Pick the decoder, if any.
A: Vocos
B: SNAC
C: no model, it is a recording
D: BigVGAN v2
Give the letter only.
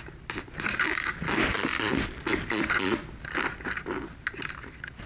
C